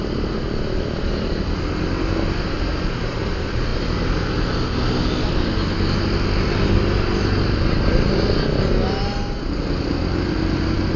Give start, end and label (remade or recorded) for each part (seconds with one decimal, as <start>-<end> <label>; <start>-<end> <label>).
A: 0.0-11.0 recorded